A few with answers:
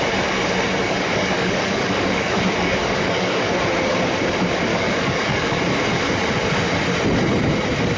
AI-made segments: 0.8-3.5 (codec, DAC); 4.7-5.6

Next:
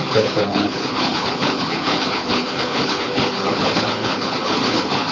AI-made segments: 0.0-5.1 (codec, HILCodec)

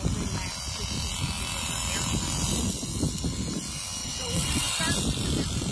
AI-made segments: 4.0-4.8 (vocoder, WaveNeXt)

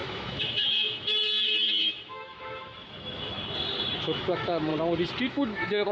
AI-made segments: 0.0-3.4 (autoencoder, DAC-VAE); 4.0-4.7; 5.3-5.9

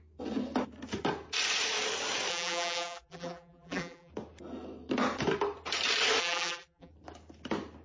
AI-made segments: 2.3-4.1 (vocoder, BigVGAN v2); 6.2-6.9

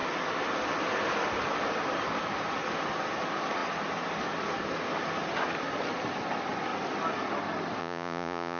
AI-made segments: 7.8-8.6 (vocoder, Vocos)